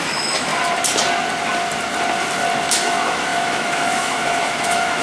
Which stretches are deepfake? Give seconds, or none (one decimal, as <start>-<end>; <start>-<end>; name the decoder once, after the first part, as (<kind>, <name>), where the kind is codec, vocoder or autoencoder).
0.0-0.5 (autoencoder, DAC-VAE); 2.7-5.0